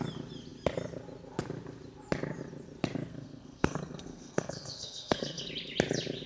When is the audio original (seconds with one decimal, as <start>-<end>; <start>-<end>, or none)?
0.0-3.1; 5.4-6.3

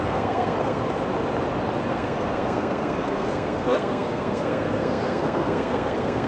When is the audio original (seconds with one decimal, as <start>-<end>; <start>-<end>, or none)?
0.8-1.9

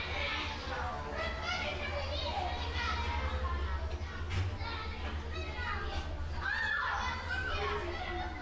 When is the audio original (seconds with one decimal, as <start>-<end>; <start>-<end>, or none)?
0.0-8.4